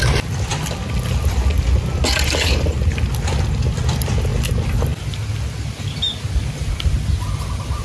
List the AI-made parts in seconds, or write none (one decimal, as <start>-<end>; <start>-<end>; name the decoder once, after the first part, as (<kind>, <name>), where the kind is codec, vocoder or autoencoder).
none